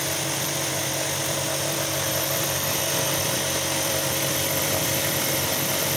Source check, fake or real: fake